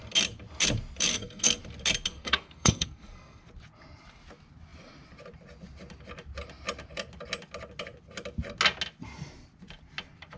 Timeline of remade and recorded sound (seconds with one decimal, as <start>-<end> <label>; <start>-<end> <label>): 0.0-1.1 recorded; 1.1-1.6 remade; 1.6-2.1 recorded; 2.1-3.5 remade; 3.5-10.4 recorded